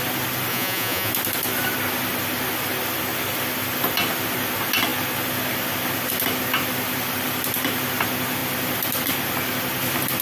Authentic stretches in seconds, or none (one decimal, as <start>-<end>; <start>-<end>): 0.0-0.5; 1.1-10.2